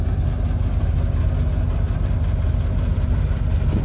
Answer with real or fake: real